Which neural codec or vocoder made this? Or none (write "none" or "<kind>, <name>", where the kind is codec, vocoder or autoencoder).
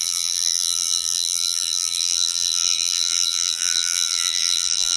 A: vocoder, BigVGAN v2